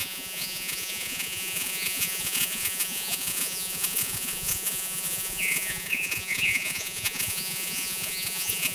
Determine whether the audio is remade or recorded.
remade